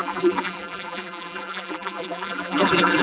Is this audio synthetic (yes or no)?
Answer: yes